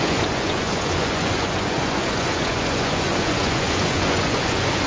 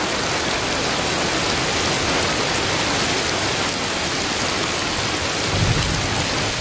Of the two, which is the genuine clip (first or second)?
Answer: second